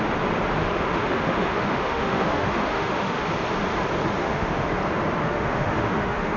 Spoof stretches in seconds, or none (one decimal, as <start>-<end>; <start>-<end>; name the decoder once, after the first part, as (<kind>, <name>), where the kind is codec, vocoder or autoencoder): 0.6-3.3 (autoencoder, DAC-VAE); 4.2-4.7; 5.2-6.4